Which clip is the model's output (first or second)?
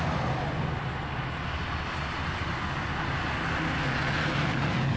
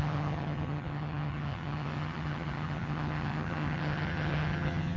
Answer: second